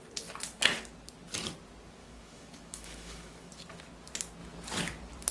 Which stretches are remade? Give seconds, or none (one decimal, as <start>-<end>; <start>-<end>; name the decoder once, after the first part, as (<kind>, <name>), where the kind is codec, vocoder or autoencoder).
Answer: 2.0-3.5 (autoencoder, DAC-VAE)